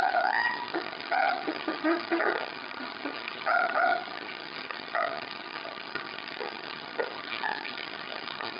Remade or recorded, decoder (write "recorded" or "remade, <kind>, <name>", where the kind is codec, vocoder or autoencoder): remade, vocoder, HiFi-GAN